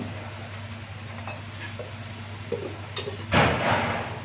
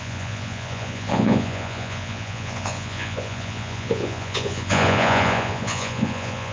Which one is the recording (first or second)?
first